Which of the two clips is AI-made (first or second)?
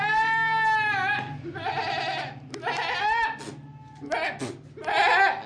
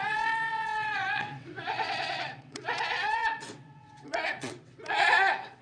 second